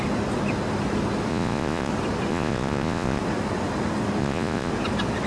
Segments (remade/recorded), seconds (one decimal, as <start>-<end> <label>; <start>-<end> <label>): 0.0-1.3 recorded; 1.3-1.9 remade; 1.9-2.3 recorded; 2.3-3.2 remade; 3.2-4.2 recorded; 4.2-4.7 remade; 4.7-5.3 recorded

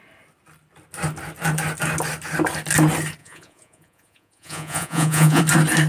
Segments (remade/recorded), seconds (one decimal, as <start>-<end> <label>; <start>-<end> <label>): 0.0-3.2 recorded; 3.2-5.4 remade; 5.4-5.9 recorded

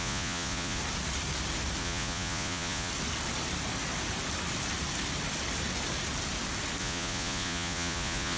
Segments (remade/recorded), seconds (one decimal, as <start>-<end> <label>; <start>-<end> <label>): 0.0-0.8 remade; 0.8-1.8 recorded; 1.8-2.9 remade; 2.9-6.8 recorded; 6.8-8.4 remade

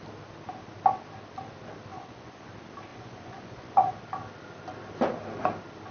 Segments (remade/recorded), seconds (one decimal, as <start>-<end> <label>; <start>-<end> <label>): 0.0-1.9 recorded; 1.9-2.5 remade; 2.5-2.9 recorded; 2.9-4.0 remade; 4.0-5.9 recorded

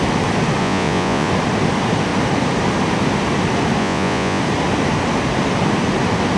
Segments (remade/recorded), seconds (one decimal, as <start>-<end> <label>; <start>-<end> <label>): 0.0-0.6 recorded; 0.6-1.3 remade; 1.3-3.8 recorded; 3.8-4.4 remade; 4.4-6.4 recorded